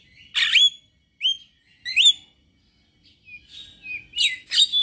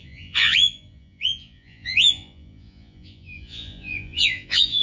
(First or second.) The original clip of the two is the first